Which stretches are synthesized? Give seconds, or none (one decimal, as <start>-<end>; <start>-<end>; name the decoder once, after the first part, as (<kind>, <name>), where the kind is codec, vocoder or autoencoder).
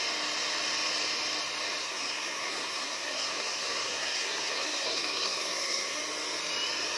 1.8-6.0 (codec, SNAC)